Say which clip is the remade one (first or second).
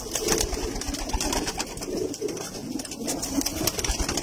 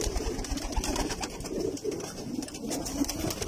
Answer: second